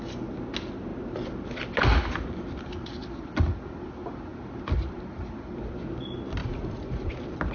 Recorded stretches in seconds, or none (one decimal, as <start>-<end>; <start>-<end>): 0.0-6.4; 7.1-7.5